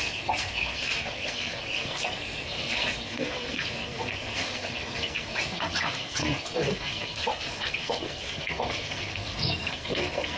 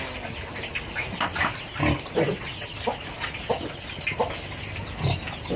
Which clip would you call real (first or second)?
second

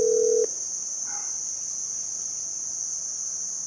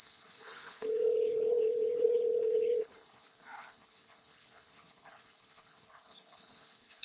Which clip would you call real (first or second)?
first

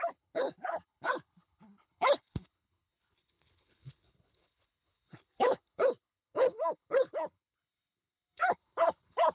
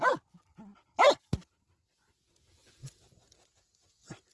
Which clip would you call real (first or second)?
second